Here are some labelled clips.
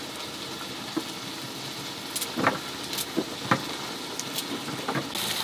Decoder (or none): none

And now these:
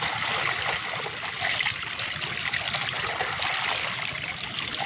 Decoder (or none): none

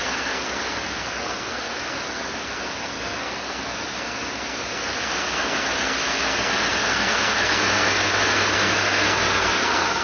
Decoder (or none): codec, SNAC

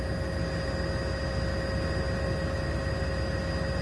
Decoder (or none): none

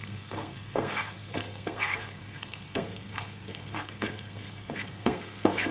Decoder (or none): codec, SNAC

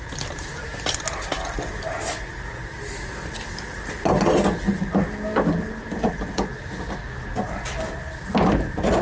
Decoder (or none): none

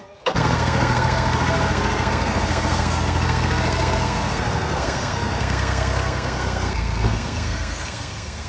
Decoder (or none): codec, SNAC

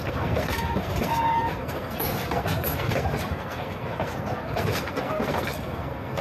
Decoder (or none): codec, SNAC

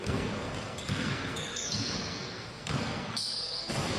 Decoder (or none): codec, SNAC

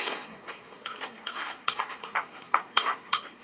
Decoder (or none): codec, SNAC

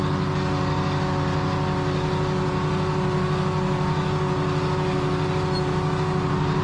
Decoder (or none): none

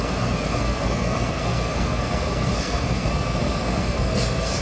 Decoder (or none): codec, SNAC